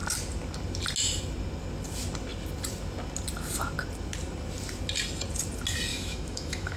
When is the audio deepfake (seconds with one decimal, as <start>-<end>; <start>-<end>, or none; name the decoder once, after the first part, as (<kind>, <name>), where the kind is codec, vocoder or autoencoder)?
5.9-6.8 (autoencoder, DAC-VAE)